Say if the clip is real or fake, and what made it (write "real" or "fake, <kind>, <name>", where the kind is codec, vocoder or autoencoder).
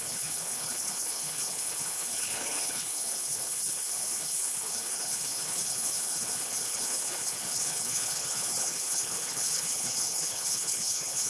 fake, codec, HILCodec